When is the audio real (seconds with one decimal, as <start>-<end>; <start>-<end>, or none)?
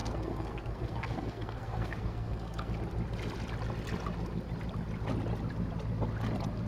2.7-6.7